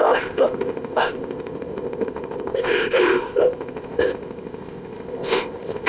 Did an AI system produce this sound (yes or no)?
yes